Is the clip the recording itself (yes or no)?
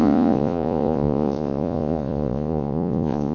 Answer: no